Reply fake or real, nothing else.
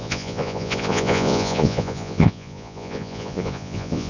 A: fake